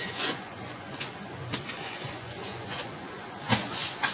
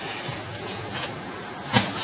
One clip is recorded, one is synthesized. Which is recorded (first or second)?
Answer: second